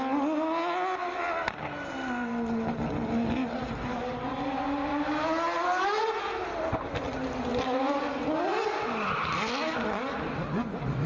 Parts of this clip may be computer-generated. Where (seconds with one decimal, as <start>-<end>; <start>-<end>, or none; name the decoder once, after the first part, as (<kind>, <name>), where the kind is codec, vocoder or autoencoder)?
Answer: none